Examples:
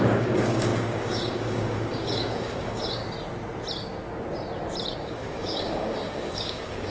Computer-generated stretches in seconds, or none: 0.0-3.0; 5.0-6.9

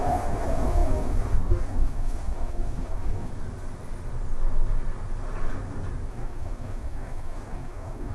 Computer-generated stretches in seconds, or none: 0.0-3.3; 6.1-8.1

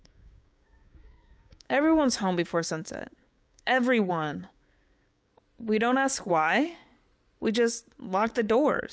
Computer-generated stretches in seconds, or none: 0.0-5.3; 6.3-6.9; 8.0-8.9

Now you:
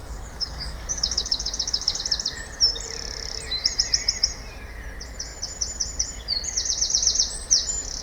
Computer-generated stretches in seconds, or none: 0.0-2.0

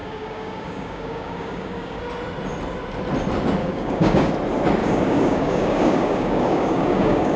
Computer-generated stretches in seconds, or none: 0.0-2.0; 3.6-4.3; 4.8-7.4